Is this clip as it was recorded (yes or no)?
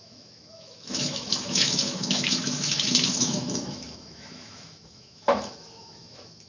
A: no